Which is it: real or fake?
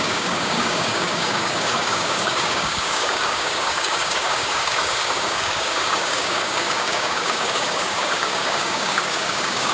fake